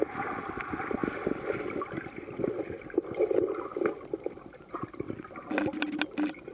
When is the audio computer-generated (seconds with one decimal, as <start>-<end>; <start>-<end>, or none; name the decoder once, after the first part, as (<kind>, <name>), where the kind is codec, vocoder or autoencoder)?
1.0-3.2 (vocoder, BigVGAN v2)